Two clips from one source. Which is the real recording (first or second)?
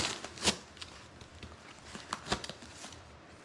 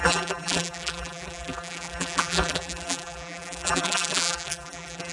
first